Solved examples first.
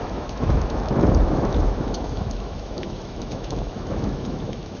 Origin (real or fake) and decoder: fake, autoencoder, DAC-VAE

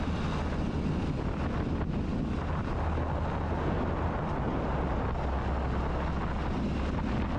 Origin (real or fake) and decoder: real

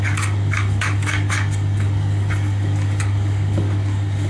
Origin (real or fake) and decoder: fake, codec, DAC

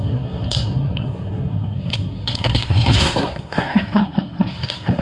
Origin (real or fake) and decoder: fake, codec, SNAC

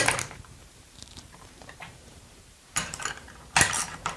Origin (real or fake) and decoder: fake, vocoder, BigVGAN v2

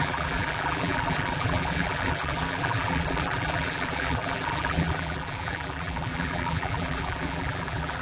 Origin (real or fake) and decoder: fake, vocoder, BigVGAN v2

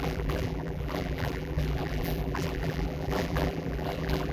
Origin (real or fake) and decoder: fake, vocoder, BigVGAN v2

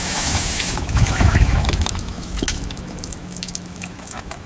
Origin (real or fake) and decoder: fake, autoencoder, DAC-VAE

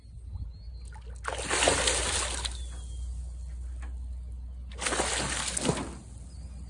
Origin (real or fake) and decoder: real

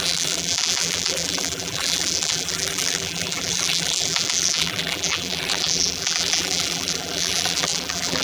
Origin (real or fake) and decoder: fake, vocoder, BigVGAN v2